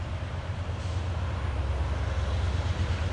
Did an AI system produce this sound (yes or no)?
no